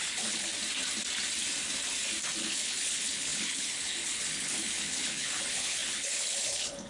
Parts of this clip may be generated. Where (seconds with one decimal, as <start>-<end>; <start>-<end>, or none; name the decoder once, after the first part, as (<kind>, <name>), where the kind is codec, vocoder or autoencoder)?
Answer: 0.0-0.5 (codec, HILCodec); 2.4-6.9